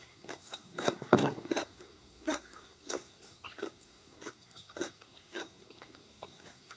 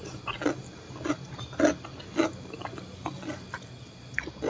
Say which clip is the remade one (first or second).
first